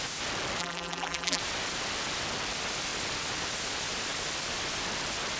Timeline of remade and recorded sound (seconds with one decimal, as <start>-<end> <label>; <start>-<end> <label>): 0.0-0.6 recorded; 0.6-1.4 remade; 1.4-5.4 recorded